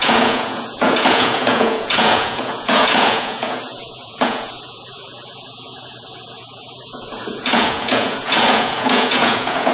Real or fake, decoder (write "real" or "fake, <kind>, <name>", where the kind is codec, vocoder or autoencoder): fake, vocoder, Vocos